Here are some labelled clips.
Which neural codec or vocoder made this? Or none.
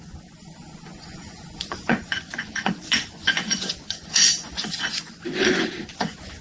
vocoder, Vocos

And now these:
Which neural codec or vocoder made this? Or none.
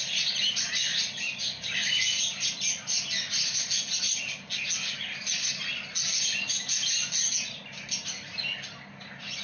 none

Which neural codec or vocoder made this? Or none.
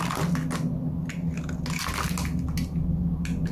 none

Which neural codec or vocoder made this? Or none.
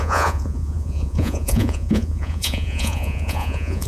vocoder, Vocos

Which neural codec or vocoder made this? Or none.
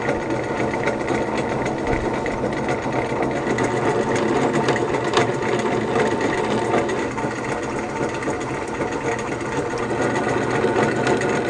none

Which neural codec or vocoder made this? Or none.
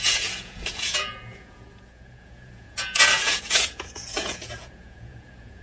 vocoder, Vocos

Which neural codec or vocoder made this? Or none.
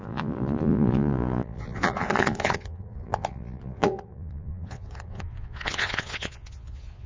vocoder, Vocos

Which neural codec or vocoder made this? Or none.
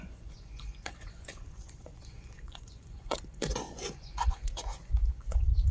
vocoder, Vocos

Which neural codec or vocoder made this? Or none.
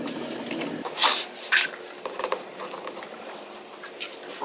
none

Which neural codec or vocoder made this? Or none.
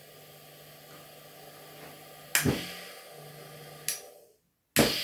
none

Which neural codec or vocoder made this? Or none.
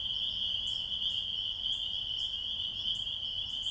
none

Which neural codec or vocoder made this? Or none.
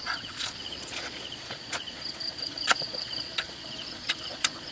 vocoder, Vocos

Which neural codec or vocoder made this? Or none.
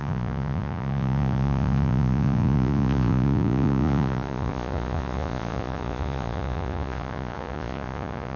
vocoder, Vocos